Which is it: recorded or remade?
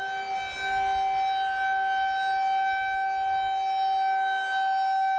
recorded